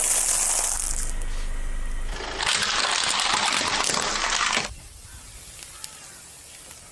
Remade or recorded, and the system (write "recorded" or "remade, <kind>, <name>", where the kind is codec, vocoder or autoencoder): recorded